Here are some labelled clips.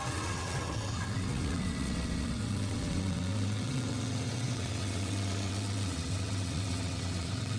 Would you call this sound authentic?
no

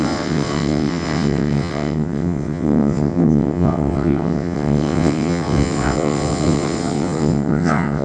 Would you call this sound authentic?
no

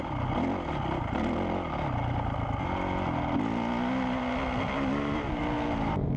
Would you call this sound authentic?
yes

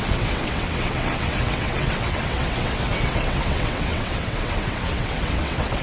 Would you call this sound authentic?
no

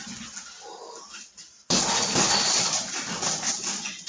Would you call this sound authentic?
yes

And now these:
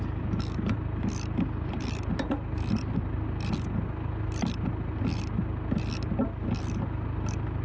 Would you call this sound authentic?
yes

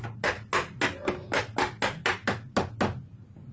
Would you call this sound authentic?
yes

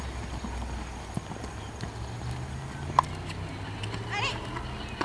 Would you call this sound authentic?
yes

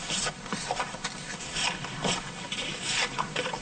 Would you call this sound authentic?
yes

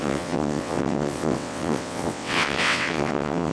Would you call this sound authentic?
no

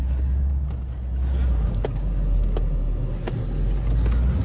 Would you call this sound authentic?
yes